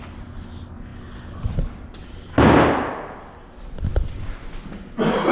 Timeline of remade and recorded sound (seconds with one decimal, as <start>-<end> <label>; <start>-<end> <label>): 0.0-5.3 recorded